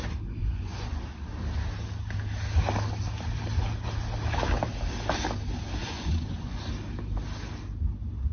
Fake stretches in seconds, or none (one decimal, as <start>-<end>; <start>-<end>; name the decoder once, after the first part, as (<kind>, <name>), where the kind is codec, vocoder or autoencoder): 0.4-1.0 (vocoder, Vocos); 5.8-6.6

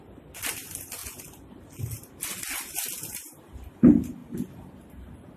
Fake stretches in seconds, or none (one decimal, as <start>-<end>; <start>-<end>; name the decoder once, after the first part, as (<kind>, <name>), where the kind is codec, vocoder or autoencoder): none

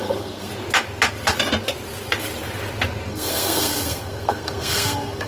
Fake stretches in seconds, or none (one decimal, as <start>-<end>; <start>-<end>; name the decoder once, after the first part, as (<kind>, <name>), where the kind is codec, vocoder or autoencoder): 0.0-0.5 (codec, SNAC); 3.1-5.3

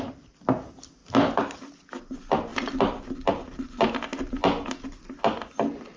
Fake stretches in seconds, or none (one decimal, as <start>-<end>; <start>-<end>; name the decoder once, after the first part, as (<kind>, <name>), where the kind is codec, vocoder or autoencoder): none

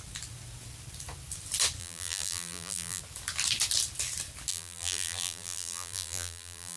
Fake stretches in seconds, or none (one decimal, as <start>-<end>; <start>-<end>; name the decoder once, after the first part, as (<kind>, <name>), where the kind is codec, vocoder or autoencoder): 1.8-3.0 (vocoder, BigVGAN v2); 4.5-6.8

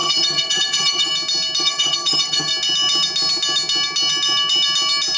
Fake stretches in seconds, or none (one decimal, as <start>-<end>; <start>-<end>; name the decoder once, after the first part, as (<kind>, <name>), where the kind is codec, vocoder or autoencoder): 0.0-1.1 (vocoder, HiFi-GAN); 1.6-2.5

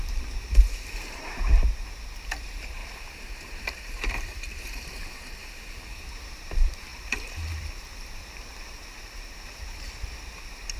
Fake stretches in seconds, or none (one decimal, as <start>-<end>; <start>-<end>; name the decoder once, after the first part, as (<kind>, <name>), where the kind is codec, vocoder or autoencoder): 0.0-2.8 (vocoder, BigVGAN v2); 3.8-5.4; 6.3-10.8